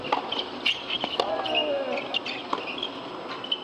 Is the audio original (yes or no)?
yes